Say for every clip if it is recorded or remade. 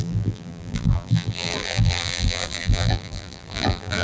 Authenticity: remade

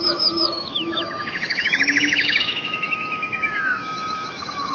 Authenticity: remade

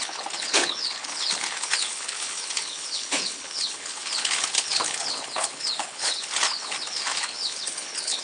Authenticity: remade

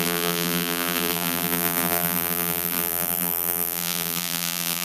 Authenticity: remade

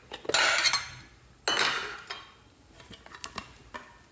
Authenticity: recorded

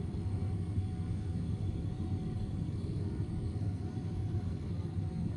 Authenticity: remade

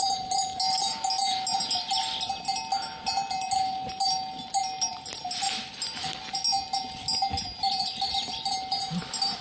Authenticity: recorded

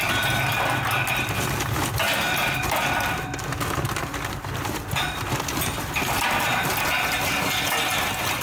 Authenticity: recorded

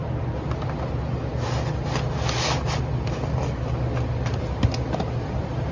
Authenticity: recorded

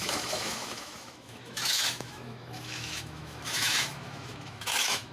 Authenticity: remade